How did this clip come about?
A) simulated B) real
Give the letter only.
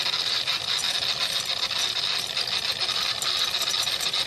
B